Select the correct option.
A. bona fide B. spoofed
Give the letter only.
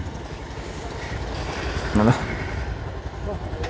A